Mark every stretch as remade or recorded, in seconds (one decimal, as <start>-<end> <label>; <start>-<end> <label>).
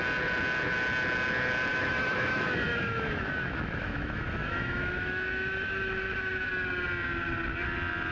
0.0-1.7 recorded; 1.7-6.5 remade; 6.5-8.1 recorded